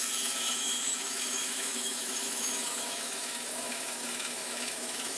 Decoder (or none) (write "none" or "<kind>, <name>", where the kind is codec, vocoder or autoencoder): autoencoder, DAC-VAE